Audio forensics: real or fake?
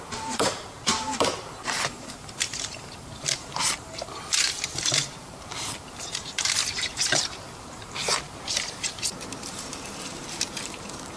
fake